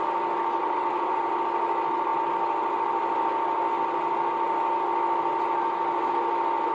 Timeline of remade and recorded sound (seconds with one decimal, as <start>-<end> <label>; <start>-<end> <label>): 0.0-0.6 recorded; 0.6-1.2 remade; 1.2-6.7 recorded